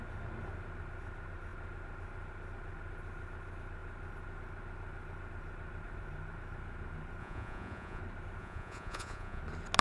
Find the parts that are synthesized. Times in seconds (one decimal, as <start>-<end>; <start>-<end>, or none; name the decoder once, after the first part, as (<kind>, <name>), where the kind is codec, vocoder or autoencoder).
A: 7.2-8.0 (vocoder, Vocos); 8.4-9.4